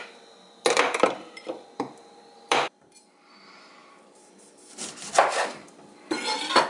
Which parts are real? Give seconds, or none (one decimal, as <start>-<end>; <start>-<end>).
none